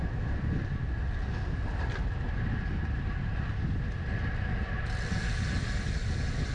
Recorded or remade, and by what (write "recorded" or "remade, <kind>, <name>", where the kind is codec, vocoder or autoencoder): recorded